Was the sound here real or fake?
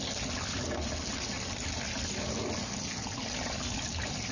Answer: real